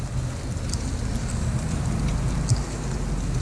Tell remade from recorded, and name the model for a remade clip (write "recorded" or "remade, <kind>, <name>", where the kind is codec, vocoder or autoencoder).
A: recorded